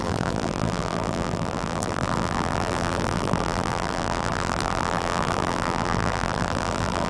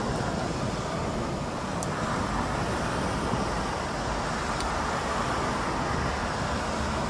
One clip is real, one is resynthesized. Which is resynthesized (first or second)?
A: first